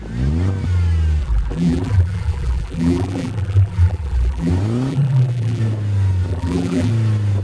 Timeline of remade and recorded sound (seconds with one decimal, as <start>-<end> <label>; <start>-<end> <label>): 0.0-1.2 recorded; 1.2-4.5 remade; 4.5-4.9 recorded; 4.9-5.6 remade; 5.6-6.3 recorded; 6.3-6.9 remade; 6.9-7.4 recorded